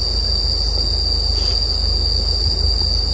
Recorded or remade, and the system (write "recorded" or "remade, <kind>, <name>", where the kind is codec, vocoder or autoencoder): recorded